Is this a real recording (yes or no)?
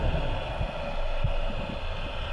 yes